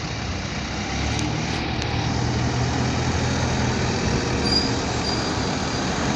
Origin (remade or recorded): recorded